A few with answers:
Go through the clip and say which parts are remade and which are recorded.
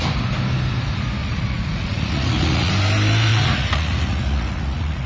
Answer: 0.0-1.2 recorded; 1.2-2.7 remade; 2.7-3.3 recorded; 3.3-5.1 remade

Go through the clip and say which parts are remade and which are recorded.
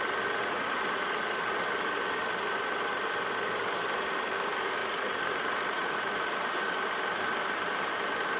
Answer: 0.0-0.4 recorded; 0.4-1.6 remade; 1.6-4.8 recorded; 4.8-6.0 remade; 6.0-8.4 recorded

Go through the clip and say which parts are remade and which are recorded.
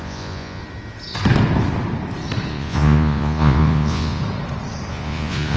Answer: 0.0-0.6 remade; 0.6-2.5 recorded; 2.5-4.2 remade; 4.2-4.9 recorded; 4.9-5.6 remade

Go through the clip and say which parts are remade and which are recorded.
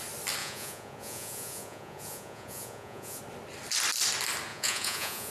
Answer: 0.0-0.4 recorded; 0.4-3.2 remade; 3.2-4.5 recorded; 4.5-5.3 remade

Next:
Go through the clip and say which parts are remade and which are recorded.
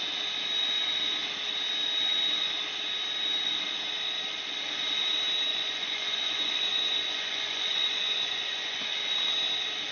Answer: 0.0-5.5 recorded; 5.5-8.8 remade; 8.8-9.9 recorded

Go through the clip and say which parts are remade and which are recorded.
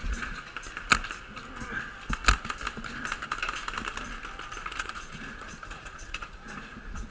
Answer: 0.0-0.5 remade; 0.5-4.8 recorded; 4.8-7.1 remade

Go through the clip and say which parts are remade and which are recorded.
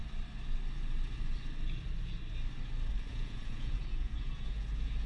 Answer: 0.0-3.1 recorded; 3.1-5.1 remade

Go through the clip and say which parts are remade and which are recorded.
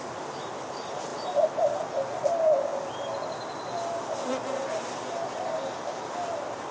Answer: 0.0-6.7 recorded